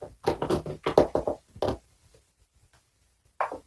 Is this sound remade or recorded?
recorded